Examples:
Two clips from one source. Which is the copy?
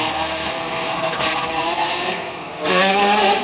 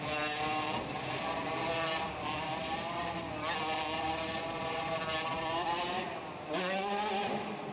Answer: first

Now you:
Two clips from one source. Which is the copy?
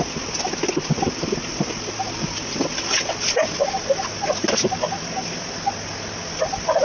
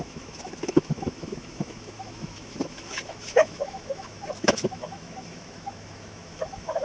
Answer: second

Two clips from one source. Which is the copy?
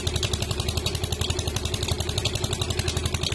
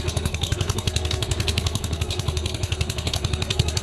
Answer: second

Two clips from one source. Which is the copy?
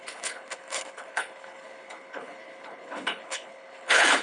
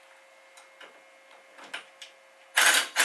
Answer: first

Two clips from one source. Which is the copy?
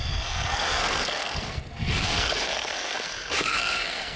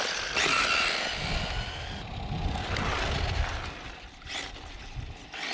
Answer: first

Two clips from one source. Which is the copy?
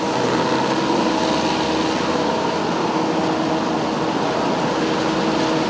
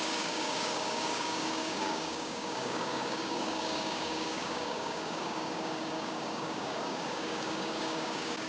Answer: second